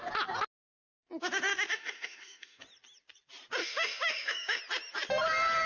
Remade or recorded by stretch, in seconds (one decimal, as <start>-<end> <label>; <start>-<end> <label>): 0.0-1.5 recorded; 1.5-2.6 remade; 2.6-3.6 recorded; 3.6-4.6 remade; 4.6-5.7 recorded